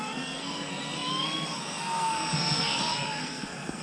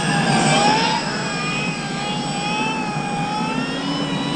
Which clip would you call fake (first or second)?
first